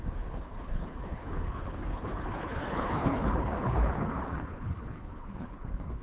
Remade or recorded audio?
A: remade